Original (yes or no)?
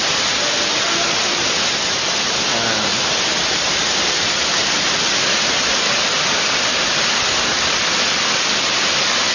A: yes